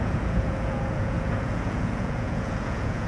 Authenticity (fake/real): fake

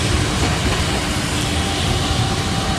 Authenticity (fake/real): real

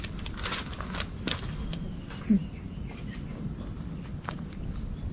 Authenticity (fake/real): real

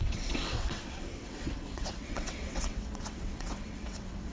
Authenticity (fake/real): fake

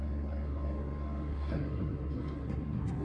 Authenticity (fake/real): fake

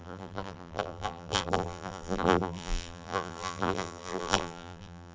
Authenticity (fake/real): fake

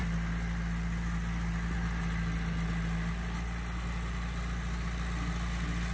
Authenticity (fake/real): real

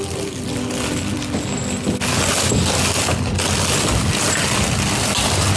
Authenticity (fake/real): real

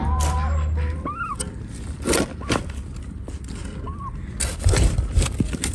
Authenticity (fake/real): real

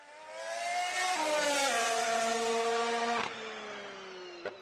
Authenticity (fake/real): real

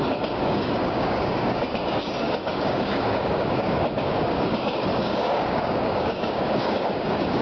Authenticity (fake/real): fake